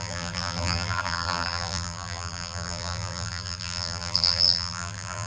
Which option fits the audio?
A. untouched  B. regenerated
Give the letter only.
B